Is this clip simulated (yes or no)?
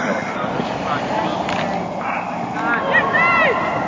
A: no